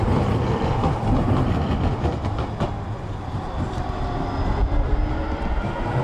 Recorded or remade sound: recorded